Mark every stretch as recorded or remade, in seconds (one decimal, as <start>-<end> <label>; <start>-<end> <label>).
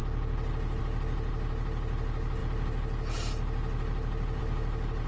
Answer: 0.0-5.1 recorded